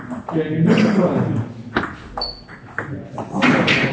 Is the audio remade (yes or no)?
no